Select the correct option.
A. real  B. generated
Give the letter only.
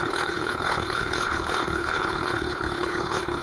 B